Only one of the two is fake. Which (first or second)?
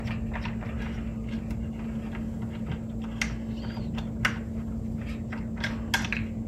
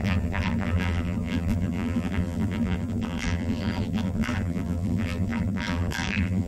second